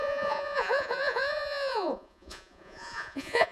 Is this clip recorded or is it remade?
remade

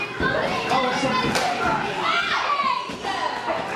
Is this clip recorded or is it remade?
recorded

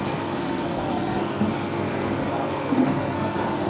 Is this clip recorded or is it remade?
remade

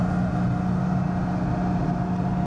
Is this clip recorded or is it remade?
recorded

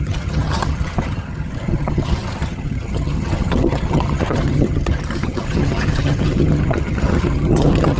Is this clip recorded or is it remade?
remade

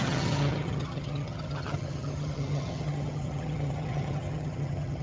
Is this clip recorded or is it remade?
remade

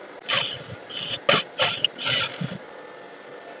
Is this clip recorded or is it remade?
recorded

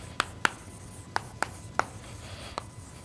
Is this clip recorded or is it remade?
recorded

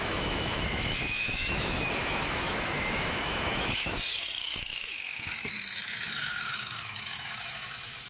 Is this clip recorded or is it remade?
remade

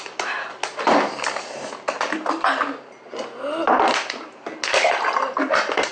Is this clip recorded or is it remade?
recorded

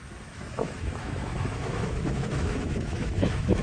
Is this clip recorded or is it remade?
remade